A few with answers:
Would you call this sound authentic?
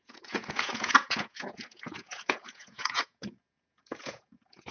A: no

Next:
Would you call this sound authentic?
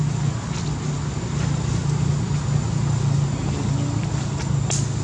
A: yes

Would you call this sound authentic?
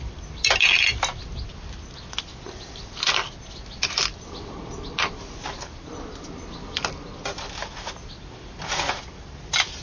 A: yes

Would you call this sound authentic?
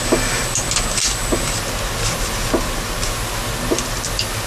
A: yes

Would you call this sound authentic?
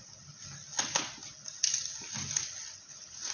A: yes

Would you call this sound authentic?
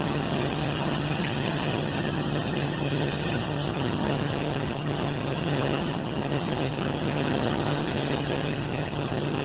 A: no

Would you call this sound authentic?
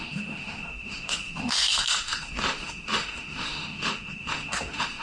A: no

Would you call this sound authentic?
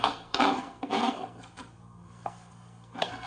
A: no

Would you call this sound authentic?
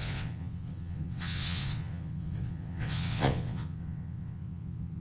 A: no